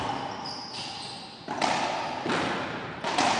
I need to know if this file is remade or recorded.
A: recorded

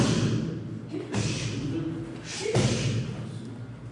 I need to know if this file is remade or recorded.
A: recorded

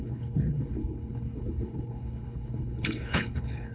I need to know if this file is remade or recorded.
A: remade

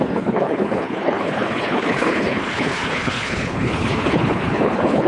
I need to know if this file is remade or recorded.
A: remade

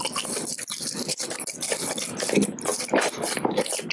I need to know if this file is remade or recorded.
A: recorded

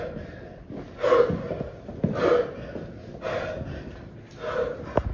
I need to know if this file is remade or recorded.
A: recorded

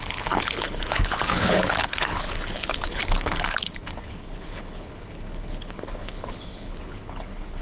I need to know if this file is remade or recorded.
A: remade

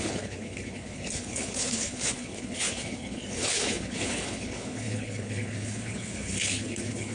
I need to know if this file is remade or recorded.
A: remade